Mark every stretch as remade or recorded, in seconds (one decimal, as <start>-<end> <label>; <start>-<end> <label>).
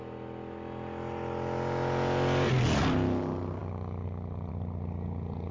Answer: 0.0-5.5 recorded